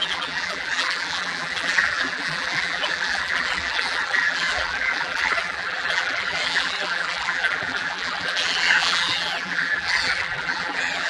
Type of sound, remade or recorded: remade